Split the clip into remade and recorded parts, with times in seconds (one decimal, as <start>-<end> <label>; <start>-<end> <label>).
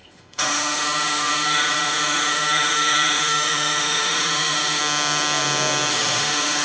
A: 0.0-4.8 remade; 4.8-5.9 recorded; 5.9-6.6 remade